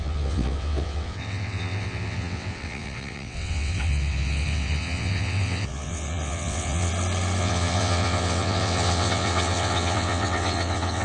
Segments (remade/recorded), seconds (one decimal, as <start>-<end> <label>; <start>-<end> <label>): 0.0-6.9 remade; 6.9-7.4 recorded; 7.4-11.0 remade